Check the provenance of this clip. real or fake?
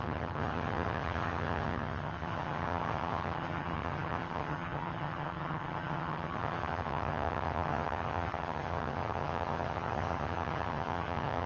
fake